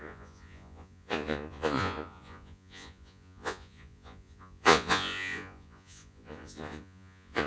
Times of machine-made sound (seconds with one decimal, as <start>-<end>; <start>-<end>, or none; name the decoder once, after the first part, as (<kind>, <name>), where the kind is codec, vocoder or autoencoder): 0.0-7.5 (vocoder, Vocos)